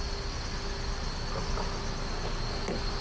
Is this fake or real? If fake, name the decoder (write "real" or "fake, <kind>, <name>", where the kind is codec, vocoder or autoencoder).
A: real